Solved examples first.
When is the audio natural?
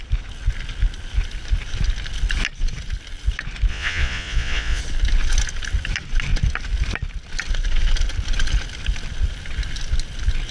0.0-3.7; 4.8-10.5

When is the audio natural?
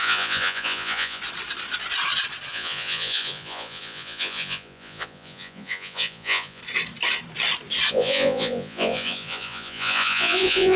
1.2-2.5; 6.6-7.9